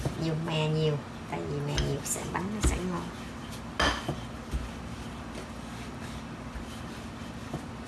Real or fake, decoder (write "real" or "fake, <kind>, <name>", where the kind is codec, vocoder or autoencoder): real